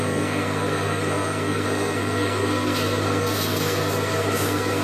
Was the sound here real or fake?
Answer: fake